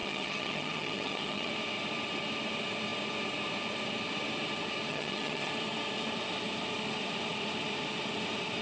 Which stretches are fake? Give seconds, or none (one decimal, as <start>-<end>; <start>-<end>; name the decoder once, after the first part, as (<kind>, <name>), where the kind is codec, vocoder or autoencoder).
0.0-1.5 (vocoder, HiFi-GAN); 4.9-5.5